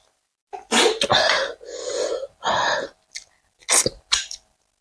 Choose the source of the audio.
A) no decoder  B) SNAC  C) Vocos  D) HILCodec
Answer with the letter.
A